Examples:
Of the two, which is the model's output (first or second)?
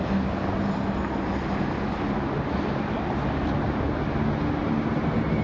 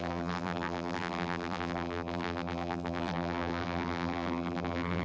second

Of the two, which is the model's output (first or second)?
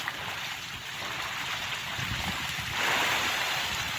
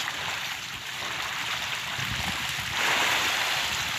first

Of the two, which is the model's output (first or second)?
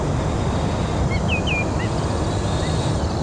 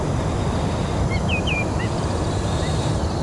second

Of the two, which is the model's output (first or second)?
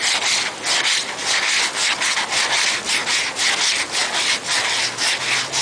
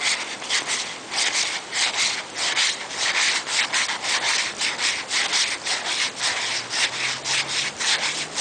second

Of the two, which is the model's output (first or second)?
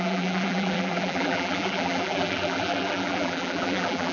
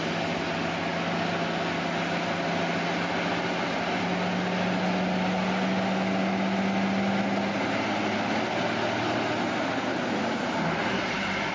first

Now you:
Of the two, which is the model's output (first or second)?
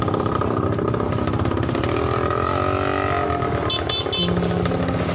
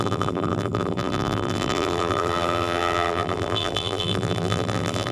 second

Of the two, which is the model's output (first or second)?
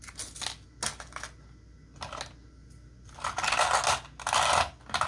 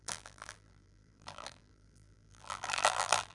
second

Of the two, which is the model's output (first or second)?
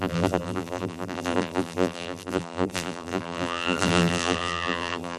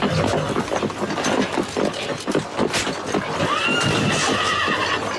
first